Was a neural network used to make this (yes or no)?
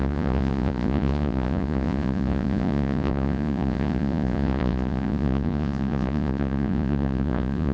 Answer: yes